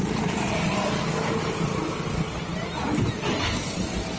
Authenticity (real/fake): real